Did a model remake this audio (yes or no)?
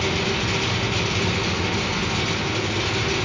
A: no